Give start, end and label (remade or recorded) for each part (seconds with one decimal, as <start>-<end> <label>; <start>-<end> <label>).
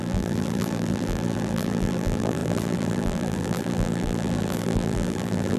0.0-5.6 remade